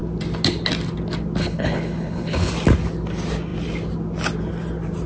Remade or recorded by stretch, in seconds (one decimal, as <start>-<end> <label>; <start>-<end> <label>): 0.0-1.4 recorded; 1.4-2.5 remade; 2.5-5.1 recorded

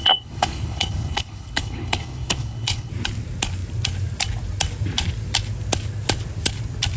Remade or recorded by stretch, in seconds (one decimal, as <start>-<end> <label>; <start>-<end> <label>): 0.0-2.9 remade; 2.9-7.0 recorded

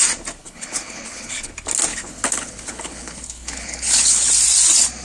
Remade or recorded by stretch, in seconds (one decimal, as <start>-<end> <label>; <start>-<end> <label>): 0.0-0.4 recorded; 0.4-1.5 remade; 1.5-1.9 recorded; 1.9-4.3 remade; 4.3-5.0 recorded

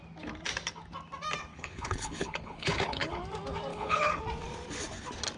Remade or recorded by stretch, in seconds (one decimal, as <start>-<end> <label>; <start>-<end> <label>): 0.0-1.5 recorded; 1.5-3.2 remade; 3.2-3.7 recorded; 3.7-4.2 remade; 4.2-5.4 recorded

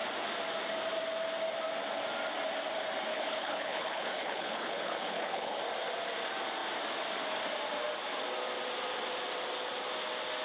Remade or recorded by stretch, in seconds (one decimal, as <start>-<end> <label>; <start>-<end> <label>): 0.0-3.1 recorded; 3.1-5.6 remade; 5.6-10.4 recorded

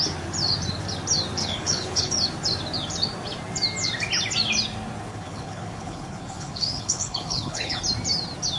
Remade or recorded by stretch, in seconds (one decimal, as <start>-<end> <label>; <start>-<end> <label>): 0.0-1.4 recorded; 1.4-2.1 remade; 2.1-5.1 recorded; 5.1-7.8 remade; 7.8-8.6 recorded

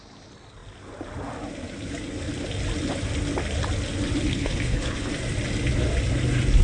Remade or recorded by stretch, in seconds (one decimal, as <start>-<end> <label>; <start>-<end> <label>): 0.0-4.3 recorded; 4.3-5.1 remade; 5.1-6.6 recorded

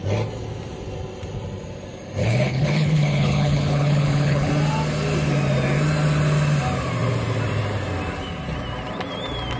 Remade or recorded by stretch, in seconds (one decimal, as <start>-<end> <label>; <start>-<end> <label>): 0.0-2.2 recorded; 2.2-4.5 remade; 4.5-9.6 recorded